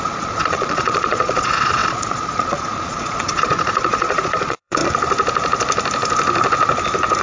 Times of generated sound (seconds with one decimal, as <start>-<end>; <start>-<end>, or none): 0.0-4.8